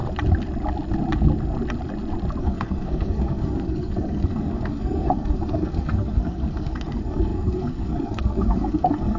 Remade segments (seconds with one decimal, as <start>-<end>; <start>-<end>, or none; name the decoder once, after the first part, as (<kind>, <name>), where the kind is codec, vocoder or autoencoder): 2.4-9.2 (codec, SNAC)